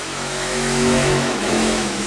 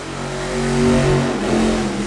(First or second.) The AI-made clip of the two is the first